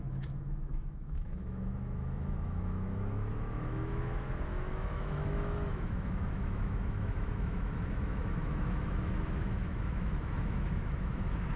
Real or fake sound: fake